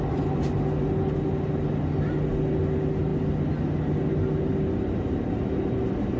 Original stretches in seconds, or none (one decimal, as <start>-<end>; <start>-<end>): 0.0-6.2